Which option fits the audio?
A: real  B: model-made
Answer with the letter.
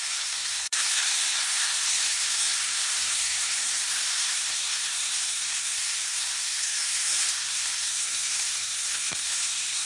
B